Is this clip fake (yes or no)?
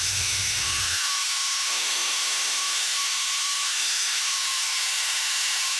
yes